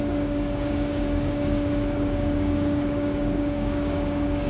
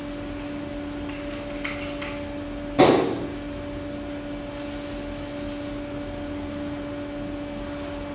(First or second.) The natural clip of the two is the second